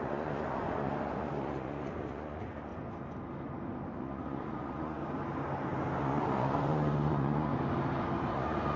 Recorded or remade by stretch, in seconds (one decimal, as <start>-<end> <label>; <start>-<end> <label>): 0.0-2.7 remade; 2.7-4.0 recorded; 4.0-5.0 remade; 5.0-6.0 recorded; 6.0-7.5 remade; 7.5-8.3 recorded; 8.3-8.8 remade